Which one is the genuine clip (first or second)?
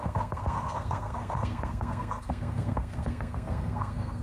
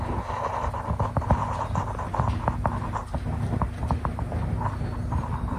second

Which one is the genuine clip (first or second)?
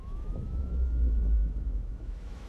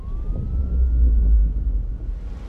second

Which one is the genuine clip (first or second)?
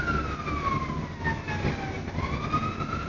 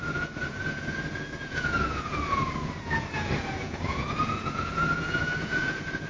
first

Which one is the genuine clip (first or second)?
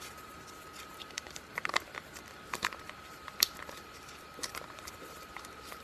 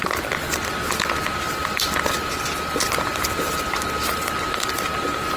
second